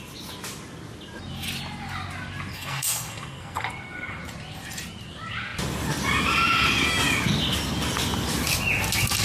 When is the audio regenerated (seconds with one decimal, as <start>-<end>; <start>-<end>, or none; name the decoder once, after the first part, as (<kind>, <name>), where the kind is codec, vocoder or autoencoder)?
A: 2.5-4.2 (codec, SNAC)